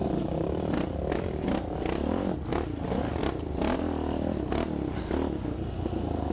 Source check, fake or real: real